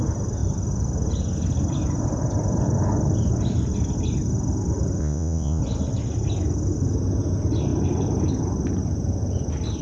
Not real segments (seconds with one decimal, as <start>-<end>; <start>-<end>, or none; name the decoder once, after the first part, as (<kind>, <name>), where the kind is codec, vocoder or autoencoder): 5.0-5.6 (vocoder, Vocos)